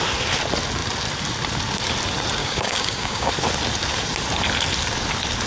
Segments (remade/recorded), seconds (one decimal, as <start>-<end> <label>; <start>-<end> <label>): 0.0-2.4 recorded; 2.4-3.3 remade; 3.3-5.5 recorded